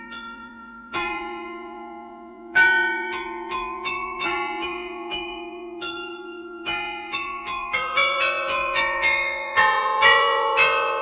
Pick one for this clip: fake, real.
fake